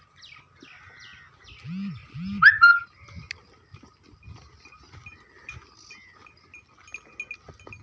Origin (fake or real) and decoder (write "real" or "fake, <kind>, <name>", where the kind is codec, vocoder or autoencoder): real